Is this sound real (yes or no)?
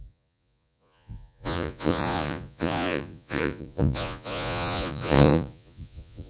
no